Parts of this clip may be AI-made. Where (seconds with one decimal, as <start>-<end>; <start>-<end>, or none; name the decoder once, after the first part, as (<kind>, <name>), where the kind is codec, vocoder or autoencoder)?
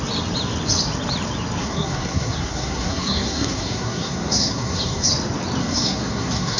1.6-5.1 (codec, SNAC); 5.6-6.6